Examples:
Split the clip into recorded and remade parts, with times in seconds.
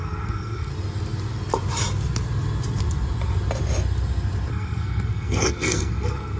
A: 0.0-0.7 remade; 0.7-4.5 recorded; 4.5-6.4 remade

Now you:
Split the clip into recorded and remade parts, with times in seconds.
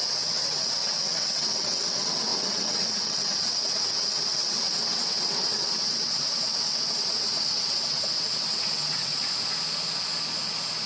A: 0.0-9.2 remade; 9.2-10.9 recorded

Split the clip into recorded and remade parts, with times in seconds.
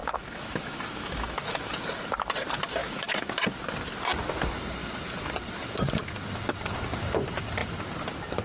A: 0.0-1.7 remade; 1.7-2.8 recorded; 2.8-3.3 remade; 3.3-8.4 recorded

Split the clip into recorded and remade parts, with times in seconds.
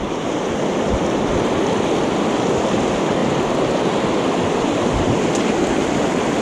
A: 0.0-6.4 remade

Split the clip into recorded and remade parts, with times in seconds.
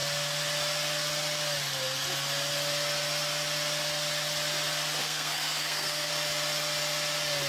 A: 0.0-5.0 recorded; 5.0-6.1 remade; 6.1-7.5 recorded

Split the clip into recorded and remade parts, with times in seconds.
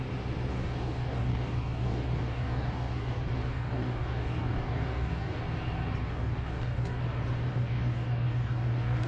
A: 0.0-0.5 recorded; 0.5-5.4 remade; 5.4-6.0 recorded; 6.0-7.0 remade; 7.0-7.5 recorded; 7.5-9.1 remade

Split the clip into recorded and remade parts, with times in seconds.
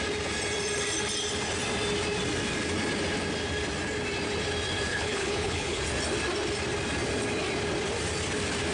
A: 0.0-4.9 recorded; 4.9-5.8 remade; 5.8-8.7 recorded